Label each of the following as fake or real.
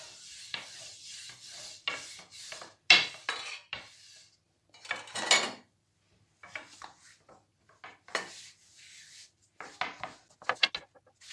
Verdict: real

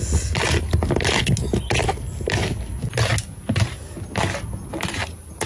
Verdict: real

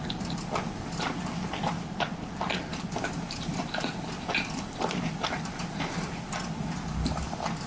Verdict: real